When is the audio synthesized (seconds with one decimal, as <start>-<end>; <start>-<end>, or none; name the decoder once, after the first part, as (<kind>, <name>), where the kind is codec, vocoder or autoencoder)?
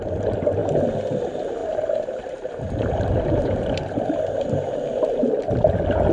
1.6-5.3 (vocoder, BigVGAN v2)